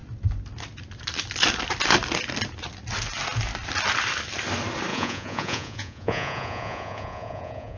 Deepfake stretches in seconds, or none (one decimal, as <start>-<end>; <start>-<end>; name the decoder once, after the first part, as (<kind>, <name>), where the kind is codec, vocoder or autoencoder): 4.9-7.8 (vocoder, Vocos)